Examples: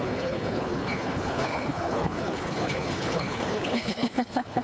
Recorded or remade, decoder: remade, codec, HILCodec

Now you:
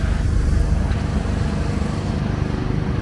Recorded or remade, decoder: recorded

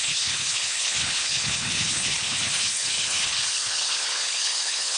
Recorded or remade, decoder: remade, codec, HILCodec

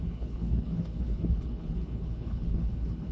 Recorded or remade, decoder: remade, codec, HILCodec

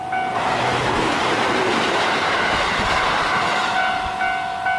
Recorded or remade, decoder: recorded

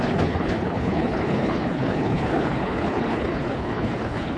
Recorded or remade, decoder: remade, codec, HILCodec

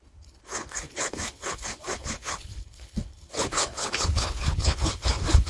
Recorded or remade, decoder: remade, codec, HILCodec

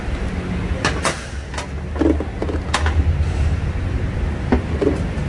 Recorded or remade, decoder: recorded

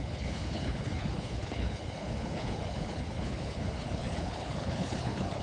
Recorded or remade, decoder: remade, codec, HILCodec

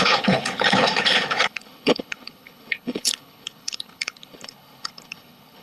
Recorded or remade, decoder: remade, codec, HILCodec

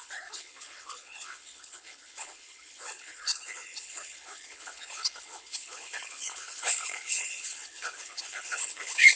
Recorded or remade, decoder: remade, codec, HILCodec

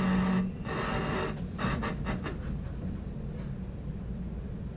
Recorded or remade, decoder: recorded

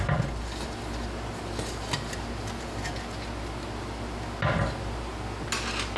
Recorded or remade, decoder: recorded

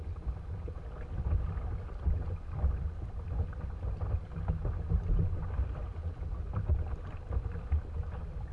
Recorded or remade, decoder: recorded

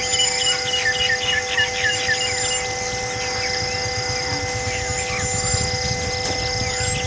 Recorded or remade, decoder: recorded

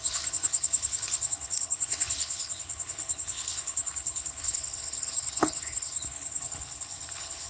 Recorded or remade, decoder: remade, codec, HILCodec